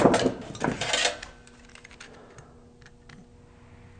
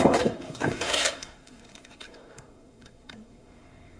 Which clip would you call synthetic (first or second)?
second